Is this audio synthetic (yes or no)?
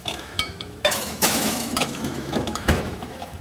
yes